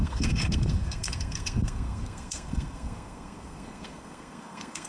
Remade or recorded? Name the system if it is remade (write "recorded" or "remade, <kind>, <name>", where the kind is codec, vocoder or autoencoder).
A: remade, codec, SNAC